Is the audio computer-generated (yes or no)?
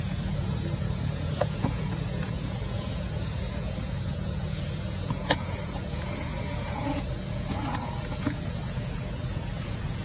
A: yes